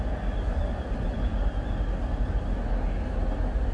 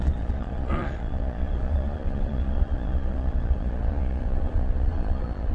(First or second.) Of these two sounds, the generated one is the second